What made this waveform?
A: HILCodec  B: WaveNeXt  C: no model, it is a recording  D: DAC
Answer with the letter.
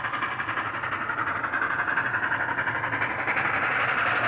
C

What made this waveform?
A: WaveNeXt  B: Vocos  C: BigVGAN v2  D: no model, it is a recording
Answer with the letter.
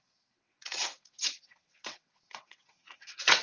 A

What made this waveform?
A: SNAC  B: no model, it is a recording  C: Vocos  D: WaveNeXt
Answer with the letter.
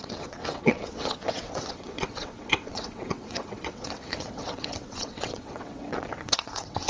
D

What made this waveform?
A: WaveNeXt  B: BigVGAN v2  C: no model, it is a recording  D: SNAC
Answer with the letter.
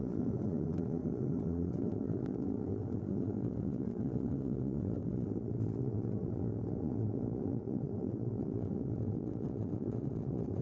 A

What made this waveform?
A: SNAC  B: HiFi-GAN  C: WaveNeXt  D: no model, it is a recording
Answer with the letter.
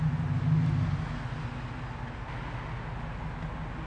D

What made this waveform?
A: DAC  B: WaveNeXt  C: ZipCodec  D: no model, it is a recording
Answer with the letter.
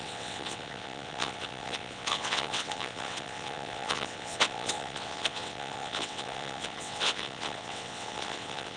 B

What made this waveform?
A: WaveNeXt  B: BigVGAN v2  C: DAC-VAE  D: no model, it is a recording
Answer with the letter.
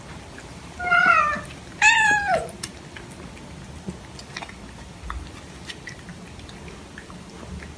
D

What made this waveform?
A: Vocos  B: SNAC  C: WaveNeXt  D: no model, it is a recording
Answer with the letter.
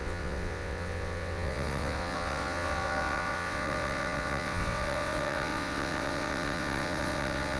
C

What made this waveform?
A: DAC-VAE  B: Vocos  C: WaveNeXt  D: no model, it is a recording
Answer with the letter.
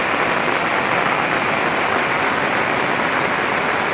D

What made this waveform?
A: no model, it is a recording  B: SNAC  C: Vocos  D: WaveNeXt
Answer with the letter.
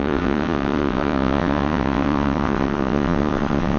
D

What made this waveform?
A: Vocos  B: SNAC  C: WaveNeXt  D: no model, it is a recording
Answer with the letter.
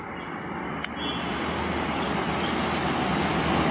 D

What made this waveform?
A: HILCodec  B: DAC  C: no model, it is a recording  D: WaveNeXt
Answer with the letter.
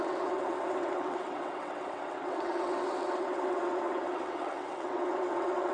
D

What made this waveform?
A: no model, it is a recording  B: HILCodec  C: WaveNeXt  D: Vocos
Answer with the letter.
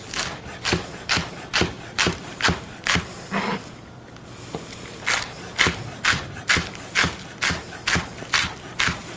A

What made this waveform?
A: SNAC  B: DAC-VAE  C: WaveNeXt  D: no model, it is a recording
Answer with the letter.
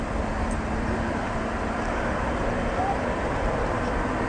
D